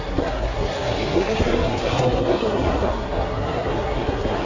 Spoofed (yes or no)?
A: yes